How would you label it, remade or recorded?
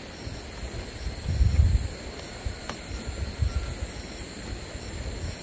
recorded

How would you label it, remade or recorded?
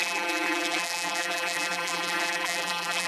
remade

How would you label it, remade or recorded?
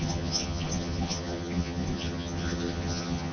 remade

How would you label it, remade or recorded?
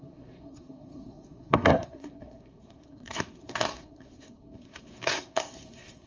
remade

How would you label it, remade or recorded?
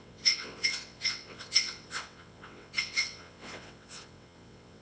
remade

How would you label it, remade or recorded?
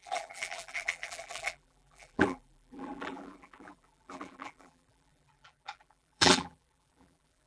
remade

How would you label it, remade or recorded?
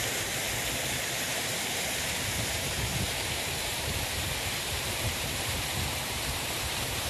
remade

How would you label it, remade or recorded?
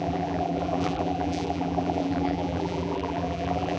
remade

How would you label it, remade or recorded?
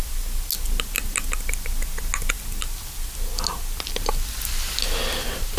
recorded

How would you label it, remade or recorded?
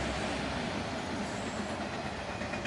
recorded